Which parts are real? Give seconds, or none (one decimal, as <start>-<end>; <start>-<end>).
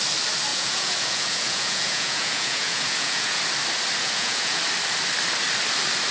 0.0-0.5; 3.4-4.0; 4.6-6.1